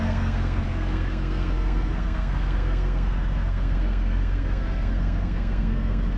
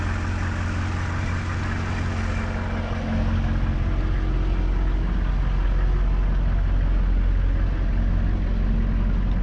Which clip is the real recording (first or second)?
second